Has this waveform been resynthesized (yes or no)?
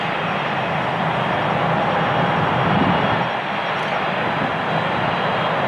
no